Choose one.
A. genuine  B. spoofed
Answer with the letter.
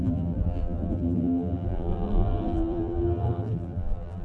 B